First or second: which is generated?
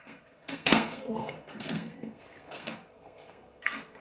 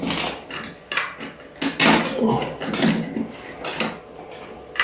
first